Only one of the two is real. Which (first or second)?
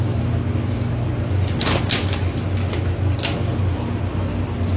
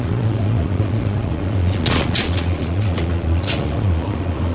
first